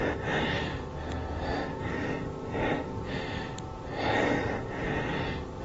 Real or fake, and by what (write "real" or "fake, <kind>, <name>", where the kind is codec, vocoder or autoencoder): real